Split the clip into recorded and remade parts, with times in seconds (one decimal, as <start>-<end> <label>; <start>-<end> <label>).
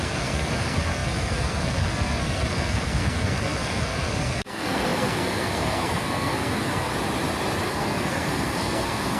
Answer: 0.0-6.9 remade; 6.9-7.6 recorded; 7.6-9.2 remade